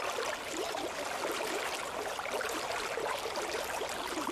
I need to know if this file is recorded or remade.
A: remade